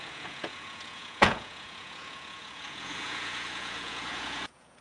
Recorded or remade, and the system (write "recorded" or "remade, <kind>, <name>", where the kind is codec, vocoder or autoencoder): remade, vocoder, Vocos